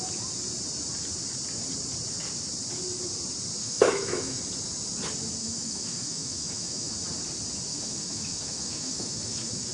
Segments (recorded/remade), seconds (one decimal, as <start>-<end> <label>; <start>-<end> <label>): 0.0-3.6 recorded; 3.6-4.4 remade; 4.4-5.4 recorded; 5.4-7.0 remade; 7.0-7.7 recorded; 7.7-9.7 remade